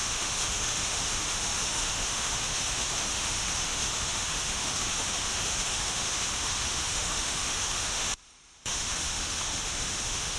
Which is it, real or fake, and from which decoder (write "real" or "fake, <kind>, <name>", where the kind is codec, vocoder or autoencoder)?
fake, autoencoder, DAC-VAE